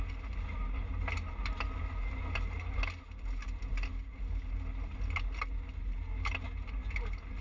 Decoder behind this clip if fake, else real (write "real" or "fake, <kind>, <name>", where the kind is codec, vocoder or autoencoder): real